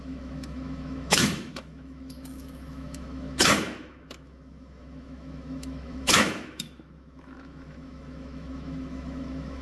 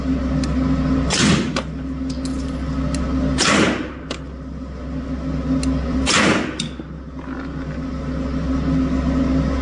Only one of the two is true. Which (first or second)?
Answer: second